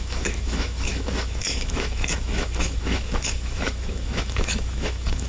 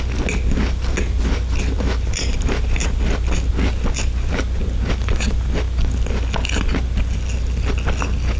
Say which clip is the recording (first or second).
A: second